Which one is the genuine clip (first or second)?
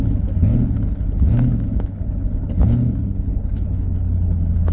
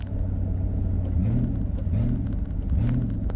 second